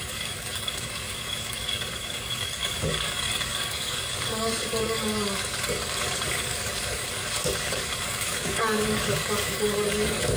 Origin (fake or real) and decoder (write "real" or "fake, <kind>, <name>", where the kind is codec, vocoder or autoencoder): fake, codec, DAC